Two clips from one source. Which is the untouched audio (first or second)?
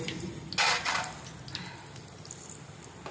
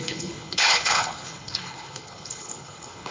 first